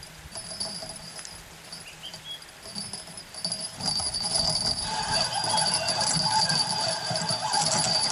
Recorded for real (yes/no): yes